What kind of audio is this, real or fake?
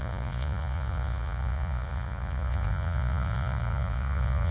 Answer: fake